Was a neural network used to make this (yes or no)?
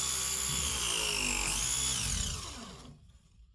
no